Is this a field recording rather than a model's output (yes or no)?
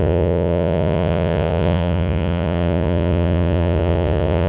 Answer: no